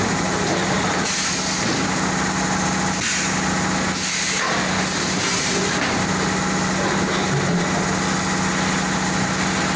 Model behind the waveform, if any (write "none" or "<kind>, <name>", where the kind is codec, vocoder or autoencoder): none